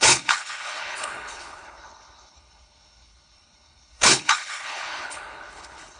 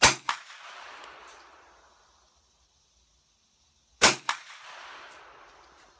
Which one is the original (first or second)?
second